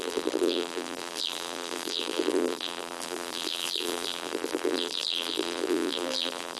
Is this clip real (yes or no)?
no